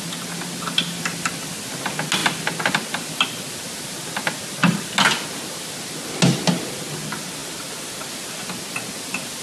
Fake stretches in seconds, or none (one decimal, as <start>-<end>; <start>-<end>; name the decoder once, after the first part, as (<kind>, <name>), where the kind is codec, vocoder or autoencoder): none